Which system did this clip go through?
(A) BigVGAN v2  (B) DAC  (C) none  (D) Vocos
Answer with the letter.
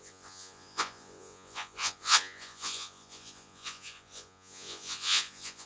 D